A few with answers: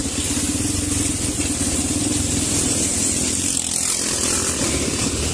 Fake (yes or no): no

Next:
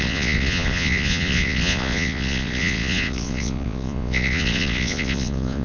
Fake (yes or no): yes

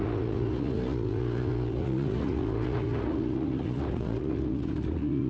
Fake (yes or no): yes